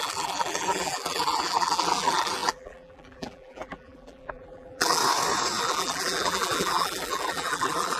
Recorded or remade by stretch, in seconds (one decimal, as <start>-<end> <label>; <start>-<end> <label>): 0.0-5.0 remade; 5.0-5.6 recorded; 5.6-8.0 remade